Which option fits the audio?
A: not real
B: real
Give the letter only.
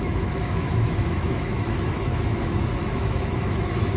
A